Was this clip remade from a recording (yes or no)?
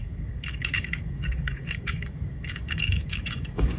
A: yes